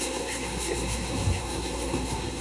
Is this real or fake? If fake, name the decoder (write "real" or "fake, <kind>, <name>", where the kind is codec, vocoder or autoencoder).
fake, codec, SNAC